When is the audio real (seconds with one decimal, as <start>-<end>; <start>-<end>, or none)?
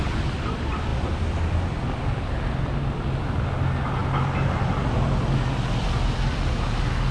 0.0-0.9; 3.5-7.1